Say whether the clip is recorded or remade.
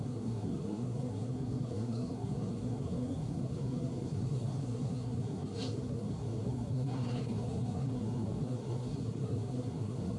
remade